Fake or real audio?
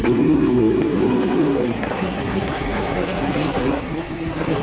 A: fake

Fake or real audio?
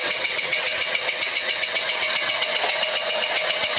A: fake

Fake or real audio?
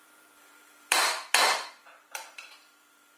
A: fake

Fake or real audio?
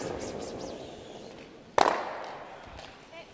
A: real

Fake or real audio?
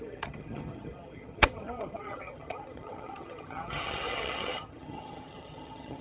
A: fake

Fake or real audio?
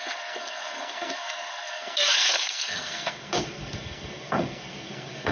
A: fake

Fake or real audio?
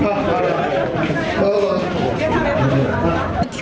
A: real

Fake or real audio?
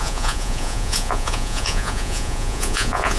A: fake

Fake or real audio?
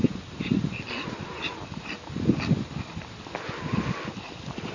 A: real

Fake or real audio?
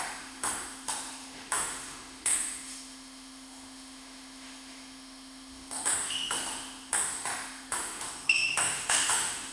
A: fake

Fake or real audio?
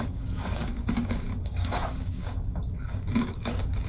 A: fake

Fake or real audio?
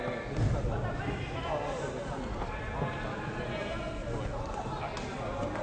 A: real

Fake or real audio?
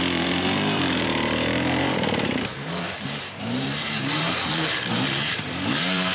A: fake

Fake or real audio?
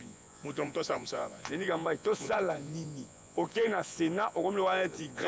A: fake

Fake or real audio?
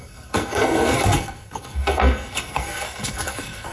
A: fake